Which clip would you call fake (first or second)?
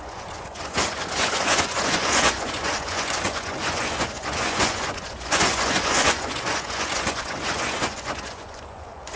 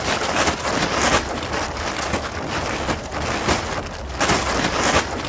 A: first